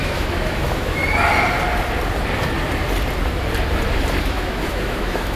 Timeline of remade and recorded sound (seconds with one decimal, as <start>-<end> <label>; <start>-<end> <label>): 0.0-1.0 remade; 1.0-4.2 recorded; 4.2-5.4 remade